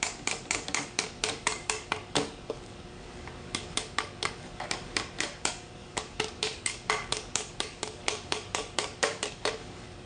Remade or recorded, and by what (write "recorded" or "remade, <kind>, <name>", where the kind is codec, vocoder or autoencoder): remade, codec, DAC